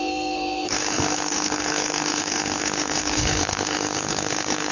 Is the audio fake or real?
fake